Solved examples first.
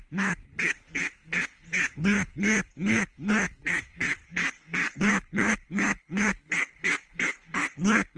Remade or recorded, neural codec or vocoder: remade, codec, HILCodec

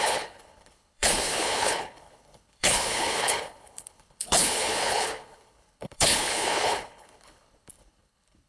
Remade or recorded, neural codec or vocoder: remade, codec, HILCodec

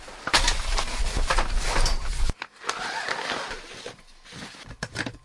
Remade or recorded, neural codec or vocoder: recorded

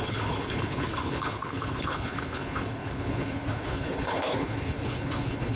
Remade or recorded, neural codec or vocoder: remade, codec, HILCodec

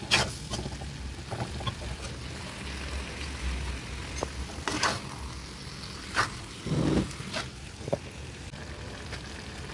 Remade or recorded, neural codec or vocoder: recorded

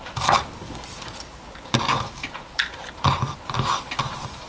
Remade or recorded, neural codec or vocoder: recorded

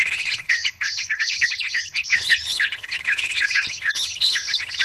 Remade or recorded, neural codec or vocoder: remade, codec, HILCodec